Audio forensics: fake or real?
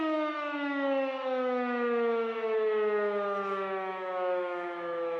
fake